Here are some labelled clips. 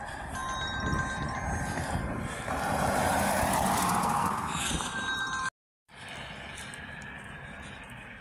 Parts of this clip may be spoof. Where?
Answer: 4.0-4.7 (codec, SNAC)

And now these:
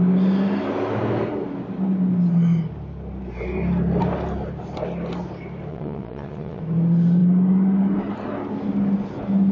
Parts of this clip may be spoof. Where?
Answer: 5.7-6.6 (vocoder, Vocos)

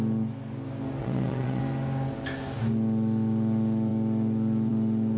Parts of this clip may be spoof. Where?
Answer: 1.0-1.6 (vocoder, Vocos)

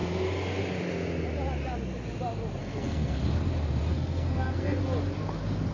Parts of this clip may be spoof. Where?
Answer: 2.6-3.2 (codec, SNAC); 3.9-4.8

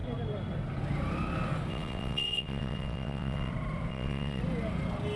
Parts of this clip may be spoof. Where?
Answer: 1.7-3.5 (vocoder, WaveNeXt); 3.9-4.4

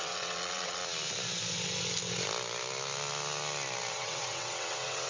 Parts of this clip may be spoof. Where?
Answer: 0.0-0.8 (vocoder, WaveNeXt); 3.9-5.1

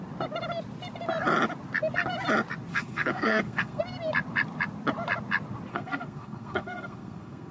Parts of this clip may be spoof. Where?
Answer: 2.7-3.8 (codec, SNAC); 5.7-7.5

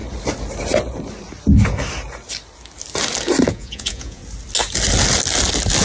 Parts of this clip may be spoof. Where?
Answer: 3.5-4.2 (vocoder, Vocos)